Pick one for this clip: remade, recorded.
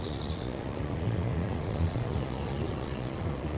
remade